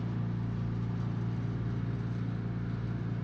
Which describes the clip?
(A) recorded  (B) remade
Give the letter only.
A